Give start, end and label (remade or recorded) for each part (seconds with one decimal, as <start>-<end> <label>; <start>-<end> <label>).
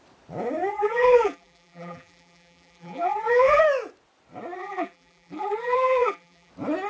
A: 0.0-0.7 recorded; 0.7-3.6 remade; 3.6-4.6 recorded; 4.6-6.5 remade; 6.5-6.9 recorded